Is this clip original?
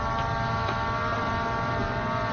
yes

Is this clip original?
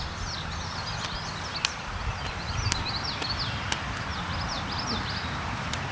yes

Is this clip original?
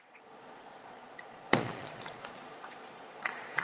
no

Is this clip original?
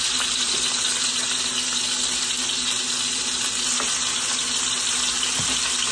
yes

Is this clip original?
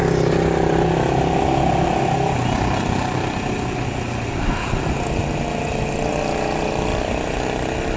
yes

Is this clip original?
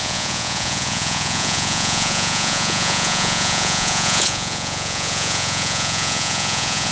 no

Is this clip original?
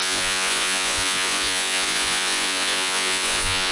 no